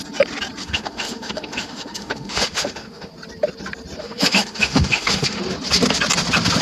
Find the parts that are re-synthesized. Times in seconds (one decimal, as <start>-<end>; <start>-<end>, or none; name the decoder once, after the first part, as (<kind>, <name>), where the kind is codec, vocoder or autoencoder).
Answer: 0.6-3.1 (autoencoder, DAC-VAE); 4.0-5.4